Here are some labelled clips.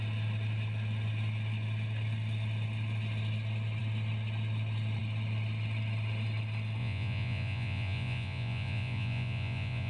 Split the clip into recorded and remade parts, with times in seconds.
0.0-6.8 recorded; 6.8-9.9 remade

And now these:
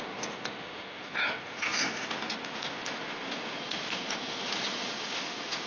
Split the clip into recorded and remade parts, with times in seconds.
0.0-2.8 recorded; 2.8-5.7 remade

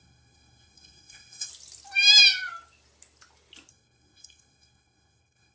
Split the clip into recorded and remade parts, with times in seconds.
0.0-1.5 remade; 1.5-3.7 recorded; 3.7-5.5 remade

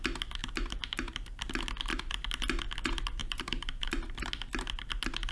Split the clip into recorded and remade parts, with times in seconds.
0.0-0.4 recorded; 0.4-1.1 remade; 1.1-3.2 recorded; 3.2-4.3 remade; 4.3-5.3 recorded